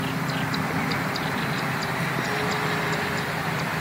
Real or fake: real